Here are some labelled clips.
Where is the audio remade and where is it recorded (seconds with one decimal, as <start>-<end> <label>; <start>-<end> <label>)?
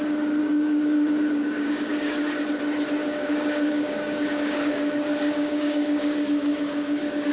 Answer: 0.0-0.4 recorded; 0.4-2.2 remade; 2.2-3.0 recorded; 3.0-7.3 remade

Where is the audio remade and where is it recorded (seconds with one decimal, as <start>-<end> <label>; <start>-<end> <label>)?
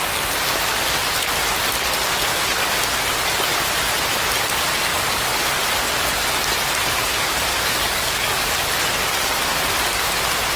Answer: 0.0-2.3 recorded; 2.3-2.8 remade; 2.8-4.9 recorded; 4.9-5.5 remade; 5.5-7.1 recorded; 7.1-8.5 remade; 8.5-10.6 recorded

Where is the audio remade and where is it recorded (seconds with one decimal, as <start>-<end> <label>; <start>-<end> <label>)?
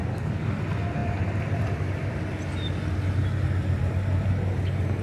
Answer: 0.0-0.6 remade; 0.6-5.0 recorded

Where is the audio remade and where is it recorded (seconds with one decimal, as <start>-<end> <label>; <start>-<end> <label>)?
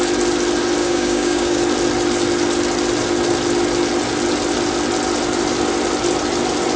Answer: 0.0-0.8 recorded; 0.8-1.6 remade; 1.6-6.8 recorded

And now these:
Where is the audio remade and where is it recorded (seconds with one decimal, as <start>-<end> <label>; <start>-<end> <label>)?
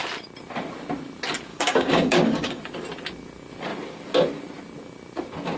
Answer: 0.0-1.5 recorded; 1.5-2.6 remade; 2.6-5.6 recorded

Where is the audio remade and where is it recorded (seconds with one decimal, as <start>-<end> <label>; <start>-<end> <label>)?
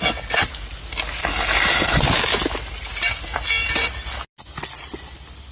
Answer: 0.0-1.2 recorded; 1.2-2.0 remade; 2.0-5.5 recorded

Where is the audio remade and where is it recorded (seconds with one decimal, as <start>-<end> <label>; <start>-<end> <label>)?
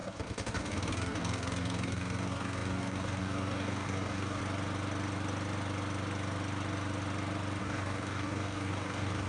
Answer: 0.0-4.4 remade; 4.4-7.6 recorded; 7.6-9.3 remade